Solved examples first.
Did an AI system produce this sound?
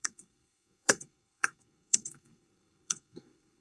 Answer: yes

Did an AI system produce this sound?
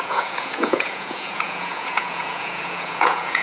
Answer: yes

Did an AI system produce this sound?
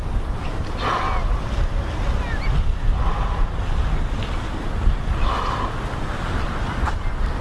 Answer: no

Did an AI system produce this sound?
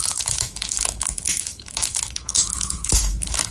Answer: yes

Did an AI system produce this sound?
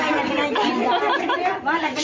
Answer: yes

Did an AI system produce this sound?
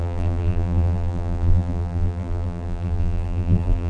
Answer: yes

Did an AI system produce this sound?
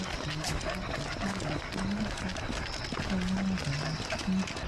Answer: no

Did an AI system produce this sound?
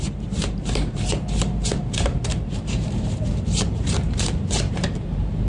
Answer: yes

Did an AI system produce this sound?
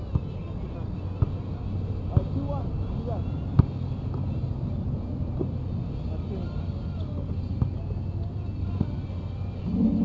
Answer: no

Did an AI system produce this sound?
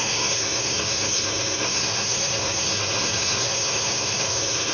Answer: yes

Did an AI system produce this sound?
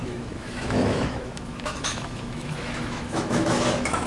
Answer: yes